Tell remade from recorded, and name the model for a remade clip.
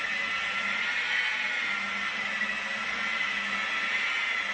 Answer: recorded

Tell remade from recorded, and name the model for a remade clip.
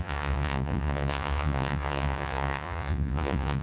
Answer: remade, vocoder, Vocos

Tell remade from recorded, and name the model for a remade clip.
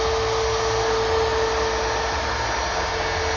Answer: recorded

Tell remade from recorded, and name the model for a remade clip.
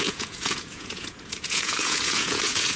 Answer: remade, vocoder, Vocos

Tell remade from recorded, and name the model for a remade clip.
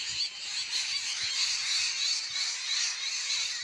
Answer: recorded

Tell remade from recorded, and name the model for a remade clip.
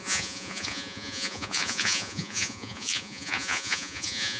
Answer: remade, vocoder, Vocos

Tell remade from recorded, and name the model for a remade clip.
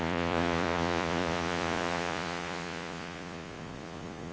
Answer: remade, vocoder, Vocos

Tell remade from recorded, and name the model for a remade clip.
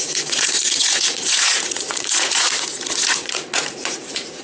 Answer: remade, vocoder, Vocos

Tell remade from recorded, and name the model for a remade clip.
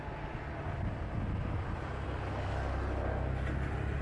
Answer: recorded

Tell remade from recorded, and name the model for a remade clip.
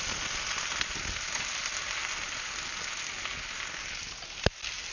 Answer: recorded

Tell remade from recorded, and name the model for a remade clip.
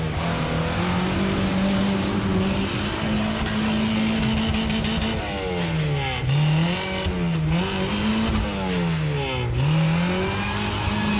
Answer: recorded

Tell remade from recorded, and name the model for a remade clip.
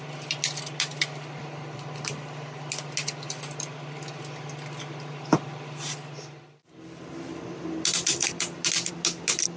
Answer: recorded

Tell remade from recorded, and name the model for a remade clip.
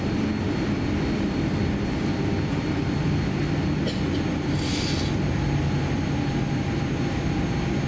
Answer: recorded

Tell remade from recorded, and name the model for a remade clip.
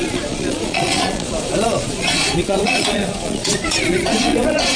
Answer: remade, vocoder, Vocos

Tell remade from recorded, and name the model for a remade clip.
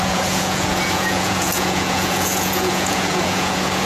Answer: remade, vocoder, Vocos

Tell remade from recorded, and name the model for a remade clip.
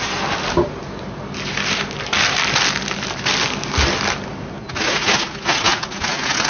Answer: recorded